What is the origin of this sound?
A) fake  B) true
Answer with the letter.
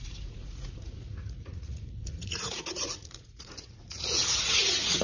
A